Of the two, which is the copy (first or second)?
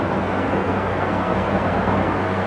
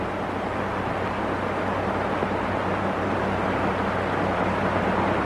first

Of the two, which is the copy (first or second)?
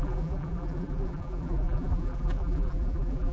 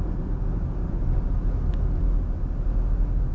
first